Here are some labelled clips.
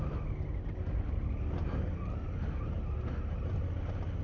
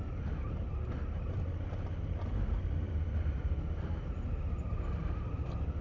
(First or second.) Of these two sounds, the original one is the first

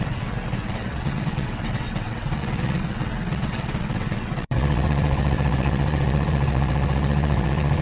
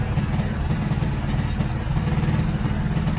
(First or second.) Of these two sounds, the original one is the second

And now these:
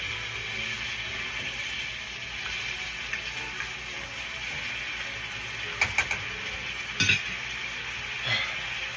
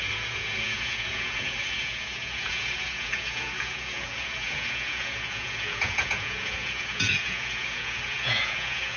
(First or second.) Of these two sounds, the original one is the first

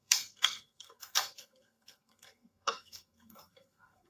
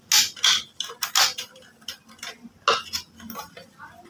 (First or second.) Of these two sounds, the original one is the second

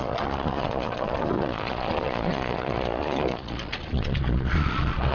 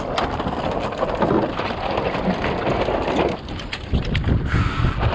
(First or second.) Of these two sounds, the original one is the second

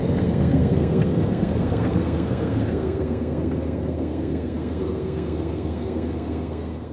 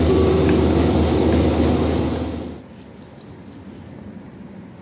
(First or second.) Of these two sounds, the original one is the second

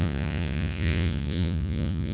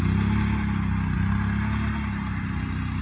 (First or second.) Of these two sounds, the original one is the second